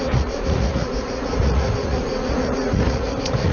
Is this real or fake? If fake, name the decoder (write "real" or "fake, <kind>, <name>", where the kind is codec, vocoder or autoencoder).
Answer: fake, vocoder, Vocos